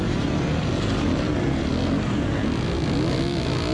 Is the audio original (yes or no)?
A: yes